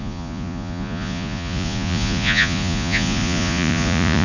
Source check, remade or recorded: remade